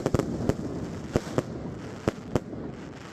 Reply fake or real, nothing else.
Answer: real